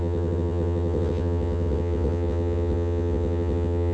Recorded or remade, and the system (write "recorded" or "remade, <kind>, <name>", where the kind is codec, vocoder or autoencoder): remade, vocoder, WaveNeXt